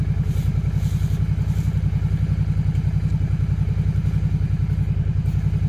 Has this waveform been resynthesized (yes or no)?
no